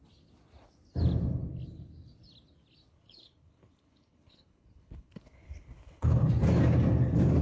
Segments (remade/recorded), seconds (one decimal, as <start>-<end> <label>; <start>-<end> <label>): 0.0-2.9 recorded; 2.9-6.3 remade; 6.3-7.4 recorded

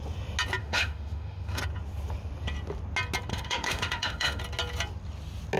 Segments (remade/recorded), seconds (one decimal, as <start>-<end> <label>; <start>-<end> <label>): 0.0-0.6 recorded; 0.6-1.6 remade; 1.6-3.3 recorded; 3.3-4.4 remade; 4.4-5.6 recorded

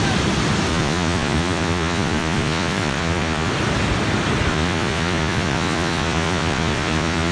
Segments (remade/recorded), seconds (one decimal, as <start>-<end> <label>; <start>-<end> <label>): 0.0-0.7 recorded; 0.7-3.5 remade; 3.5-4.5 recorded; 4.5-7.3 remade

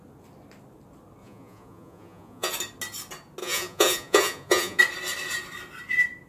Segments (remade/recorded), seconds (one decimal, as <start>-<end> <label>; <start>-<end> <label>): 0.0-1.2 recorded; 1.2-2.5 remade; 2.5-3.4 recorded; 3.4-4.8 remade; 4.8-6.3 recorded